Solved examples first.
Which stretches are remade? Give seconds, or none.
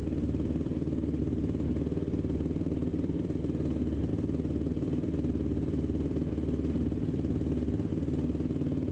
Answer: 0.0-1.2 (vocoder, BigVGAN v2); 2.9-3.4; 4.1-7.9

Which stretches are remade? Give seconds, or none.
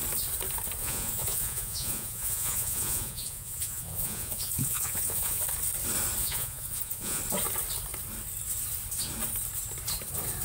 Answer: 0.8-5.4 (vocoder, Vocos); 6.2-7.2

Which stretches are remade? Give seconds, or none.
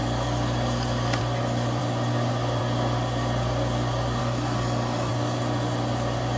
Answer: 4.2-5.1 (codec, DAC)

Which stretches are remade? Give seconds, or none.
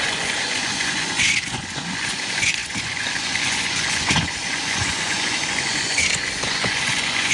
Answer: 0.0-7.3 (vocoder, Vocos)